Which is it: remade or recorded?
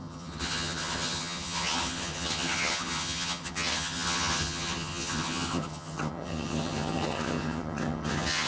remade